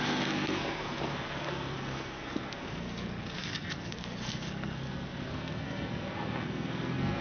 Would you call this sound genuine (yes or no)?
no